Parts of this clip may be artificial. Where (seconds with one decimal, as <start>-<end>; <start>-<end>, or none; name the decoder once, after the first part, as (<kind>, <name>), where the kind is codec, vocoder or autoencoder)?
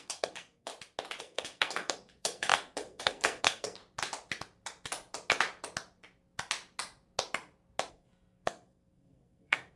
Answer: 0.0-0.7 (codec, SNAC); 1.2-3.8; 7.9-9.8